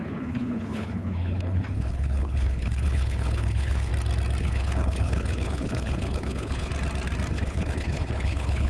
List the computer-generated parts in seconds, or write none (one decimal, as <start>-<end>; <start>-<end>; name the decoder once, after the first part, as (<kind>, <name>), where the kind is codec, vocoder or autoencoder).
0.0-3.9 (codec, HILCodec); 4.4-6.7; 7.3-8.7

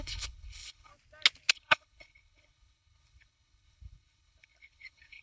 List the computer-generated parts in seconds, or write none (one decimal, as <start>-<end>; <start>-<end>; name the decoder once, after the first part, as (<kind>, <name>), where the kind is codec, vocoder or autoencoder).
0.0-0.9 (codec, HILCodec); 1.5-5.2

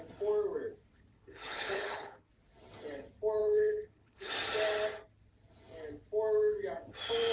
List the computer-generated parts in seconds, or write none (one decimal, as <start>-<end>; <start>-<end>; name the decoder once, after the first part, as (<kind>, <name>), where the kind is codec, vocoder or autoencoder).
1.1-2.3 (codec, HILCodec); 3.4-4.3

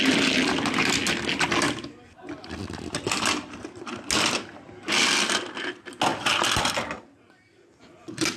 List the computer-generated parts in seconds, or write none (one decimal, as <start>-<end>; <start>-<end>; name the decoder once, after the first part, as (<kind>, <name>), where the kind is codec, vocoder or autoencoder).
none